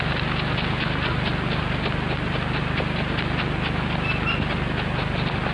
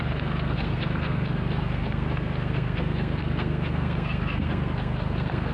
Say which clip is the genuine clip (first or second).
first